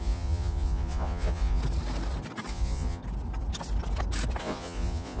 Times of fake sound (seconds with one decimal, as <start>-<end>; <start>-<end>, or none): 0.0-1.6; 2.5-3.0; 4.4-5.2